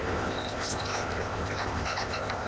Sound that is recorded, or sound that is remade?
remade